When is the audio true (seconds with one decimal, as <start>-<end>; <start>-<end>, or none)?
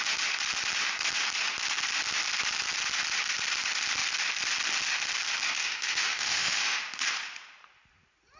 0.0-5.6; 6.8-8.4